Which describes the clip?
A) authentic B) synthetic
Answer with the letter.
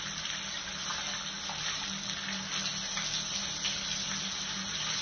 A